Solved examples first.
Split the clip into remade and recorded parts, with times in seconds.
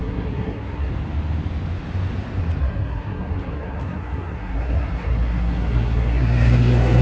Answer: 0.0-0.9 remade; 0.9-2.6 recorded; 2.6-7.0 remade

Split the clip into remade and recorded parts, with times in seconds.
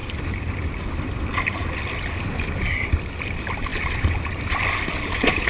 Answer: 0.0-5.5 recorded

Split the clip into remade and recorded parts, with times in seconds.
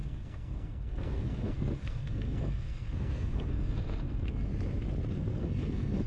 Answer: 0.0-4.5 remade; 4.5-5.1 recorded; 5.1-6.1 remade